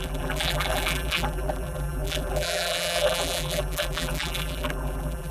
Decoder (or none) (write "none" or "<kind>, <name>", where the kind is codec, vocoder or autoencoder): vocoder, BigVGAN v2